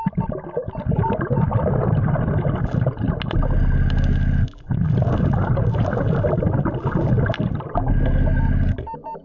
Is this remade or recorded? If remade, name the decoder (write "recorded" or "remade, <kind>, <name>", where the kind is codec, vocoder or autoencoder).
recorded